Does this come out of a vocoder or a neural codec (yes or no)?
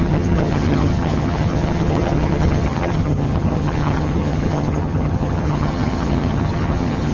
yes